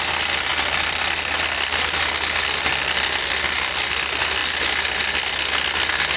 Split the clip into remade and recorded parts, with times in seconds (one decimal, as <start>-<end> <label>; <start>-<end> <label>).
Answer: 0.0-6.2 recorded